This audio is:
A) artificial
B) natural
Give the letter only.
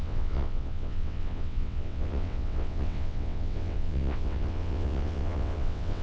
A